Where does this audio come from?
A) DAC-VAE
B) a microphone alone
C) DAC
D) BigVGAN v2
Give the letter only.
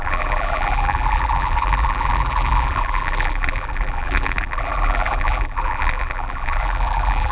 D